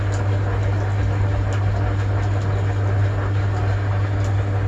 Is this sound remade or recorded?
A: recorded